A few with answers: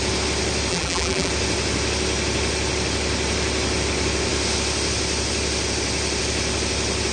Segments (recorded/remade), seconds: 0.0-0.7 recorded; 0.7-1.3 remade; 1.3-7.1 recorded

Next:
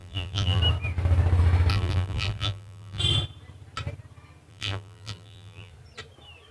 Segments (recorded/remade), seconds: 0.0-0.6 remade; 0.6-1.7 recorded; 1.7-3.0 remade; 3.0-4.5 recorded; 4.5-5.7 remade; 5.7-6.5 recorded

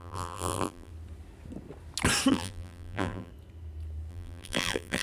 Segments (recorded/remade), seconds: 0.0-0.9 remade; 0.9-2.3 recorded; 2.3-3.3 remade; 3.3-4.1 recorded; 4.1-5.0 remade

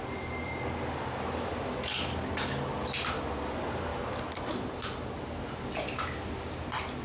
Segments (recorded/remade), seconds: 0.0-3.9 recorded; 3.9-5.5 remade; 5.5-7.0 recorded

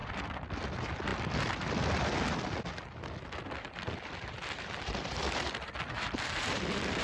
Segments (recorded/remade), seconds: 0.0-7.0 remade

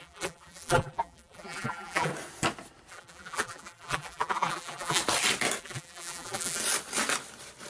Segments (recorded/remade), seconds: 0.0-2.1 remade; 2.1-2.9 recorded; 2.9-5.0 remade; 5.0-5.6 recorded; 5.6-6.6 remade; 6.6-7.7 recorded